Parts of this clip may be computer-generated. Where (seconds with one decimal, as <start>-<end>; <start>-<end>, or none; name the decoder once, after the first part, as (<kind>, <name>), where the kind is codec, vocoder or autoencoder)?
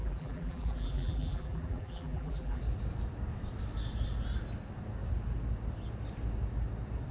0.0-2.6 (vocoder, BigVGAN v2)